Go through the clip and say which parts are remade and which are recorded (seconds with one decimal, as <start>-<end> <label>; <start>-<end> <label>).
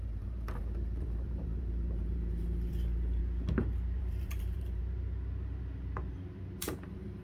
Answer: 0.0-3.2 remade; 3.2-4.0 recorded; 4.0-4.8 remade; 4.8-6.6 recorded; 6.6-7.2 remade